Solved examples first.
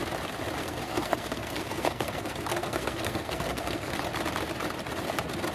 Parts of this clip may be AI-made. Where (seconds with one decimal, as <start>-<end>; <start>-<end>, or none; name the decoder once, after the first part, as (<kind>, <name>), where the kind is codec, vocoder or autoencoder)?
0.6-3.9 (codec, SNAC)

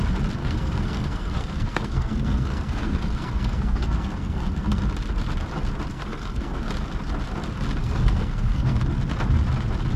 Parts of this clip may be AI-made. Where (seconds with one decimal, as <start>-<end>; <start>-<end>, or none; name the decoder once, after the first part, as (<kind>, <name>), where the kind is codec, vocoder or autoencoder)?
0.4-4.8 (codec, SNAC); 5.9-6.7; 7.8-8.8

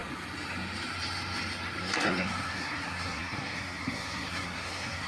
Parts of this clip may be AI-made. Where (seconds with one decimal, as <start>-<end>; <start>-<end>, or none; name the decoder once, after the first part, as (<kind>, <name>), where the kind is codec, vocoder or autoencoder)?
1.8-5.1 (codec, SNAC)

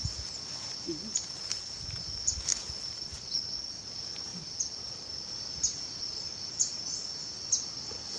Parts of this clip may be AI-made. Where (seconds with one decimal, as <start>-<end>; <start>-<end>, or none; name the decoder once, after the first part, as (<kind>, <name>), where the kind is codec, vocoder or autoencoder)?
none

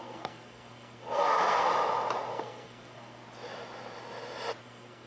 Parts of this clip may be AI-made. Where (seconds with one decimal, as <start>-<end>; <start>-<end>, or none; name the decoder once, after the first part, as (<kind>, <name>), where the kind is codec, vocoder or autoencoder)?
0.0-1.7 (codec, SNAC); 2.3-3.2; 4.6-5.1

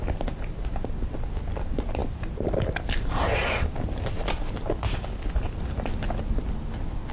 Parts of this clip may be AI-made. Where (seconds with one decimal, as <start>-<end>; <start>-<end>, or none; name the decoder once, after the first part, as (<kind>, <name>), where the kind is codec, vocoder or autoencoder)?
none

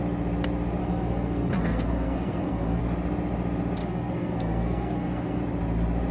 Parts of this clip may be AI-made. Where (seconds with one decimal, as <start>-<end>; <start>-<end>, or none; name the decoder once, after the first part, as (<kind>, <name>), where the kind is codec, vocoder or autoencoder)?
0.8-2.8 (codec, SNAC); 3.8-5.4